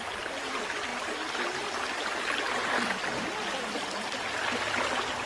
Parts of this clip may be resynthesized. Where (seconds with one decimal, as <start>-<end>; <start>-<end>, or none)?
none